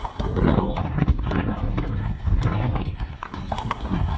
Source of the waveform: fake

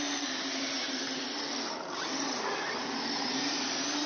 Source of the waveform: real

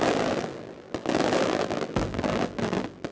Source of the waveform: fake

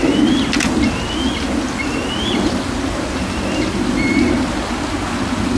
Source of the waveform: real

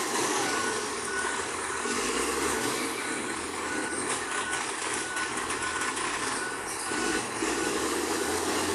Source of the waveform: fake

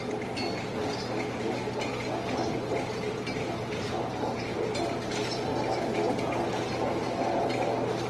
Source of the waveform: real